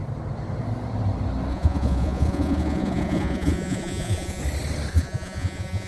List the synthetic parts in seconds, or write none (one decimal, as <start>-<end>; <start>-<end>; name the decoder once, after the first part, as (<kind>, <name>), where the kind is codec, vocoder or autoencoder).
1.5-4.4 (vocoder, Vocos); 4.9-5.9